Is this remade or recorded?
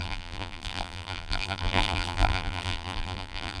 remade